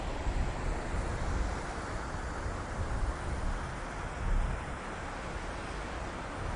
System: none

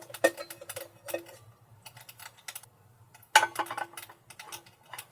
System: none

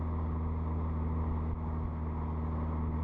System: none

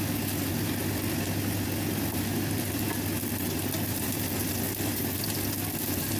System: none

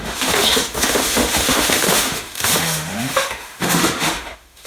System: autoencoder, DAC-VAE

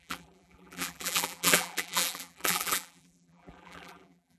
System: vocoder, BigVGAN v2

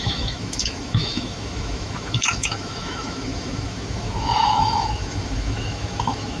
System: autoencoder, DAC-VAE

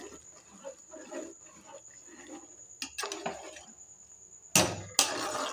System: none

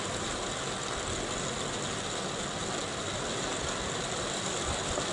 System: none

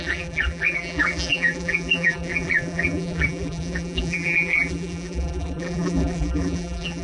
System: vocoder, BigVGAN v2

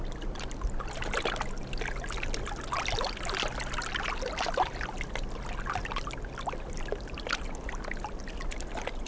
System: none